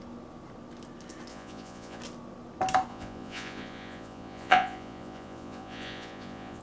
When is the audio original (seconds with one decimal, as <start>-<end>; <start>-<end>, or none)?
0.0-1.3; 2.0-2.9